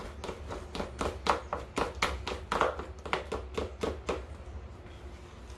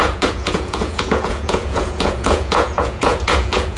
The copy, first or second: second